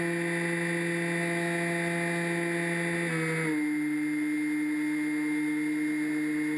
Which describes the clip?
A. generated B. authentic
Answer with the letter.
B